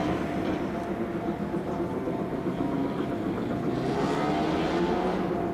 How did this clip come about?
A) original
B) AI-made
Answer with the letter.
A